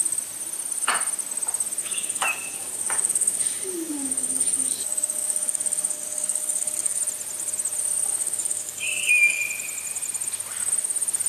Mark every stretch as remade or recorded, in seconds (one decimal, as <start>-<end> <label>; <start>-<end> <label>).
0.0-1.8 recorded; 1.8-7.0 remade; 7.0-8.2 recorded; 8.2-9.4 remade; 9.4-11.3 recorded